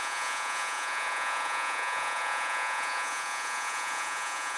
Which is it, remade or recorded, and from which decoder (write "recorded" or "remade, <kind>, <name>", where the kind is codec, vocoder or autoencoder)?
remade, vocoder, Vocos